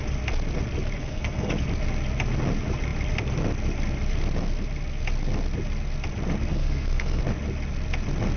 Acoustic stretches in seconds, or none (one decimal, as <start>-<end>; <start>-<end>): 0.0-1.0; 1.5-6.5; 7.2-8.4